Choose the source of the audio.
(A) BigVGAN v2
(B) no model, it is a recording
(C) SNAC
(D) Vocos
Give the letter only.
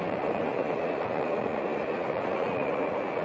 D